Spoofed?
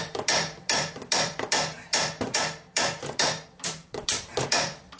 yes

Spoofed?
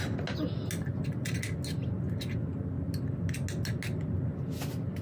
no